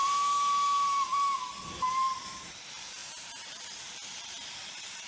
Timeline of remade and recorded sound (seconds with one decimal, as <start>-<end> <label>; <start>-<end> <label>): 0.0-1.7 recorded; 1.7-5.1 remade